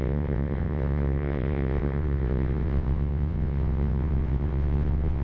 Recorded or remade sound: remade